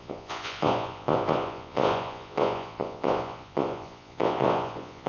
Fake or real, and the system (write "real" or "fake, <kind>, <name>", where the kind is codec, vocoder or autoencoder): fake, vocoder, Vocos